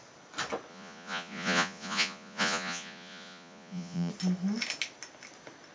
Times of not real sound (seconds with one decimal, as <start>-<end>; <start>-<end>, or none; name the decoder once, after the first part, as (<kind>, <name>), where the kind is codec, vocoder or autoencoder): 0.7-4.1 (vocoder, Vocos)